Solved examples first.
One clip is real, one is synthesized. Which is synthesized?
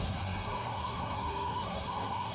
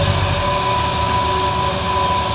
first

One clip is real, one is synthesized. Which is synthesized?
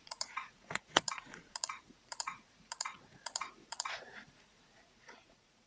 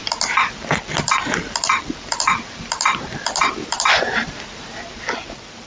first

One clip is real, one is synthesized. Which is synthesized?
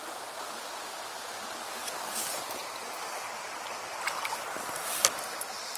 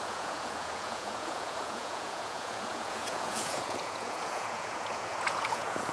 second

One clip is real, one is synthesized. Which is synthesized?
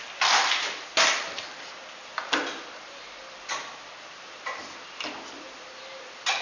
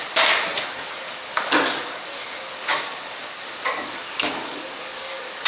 second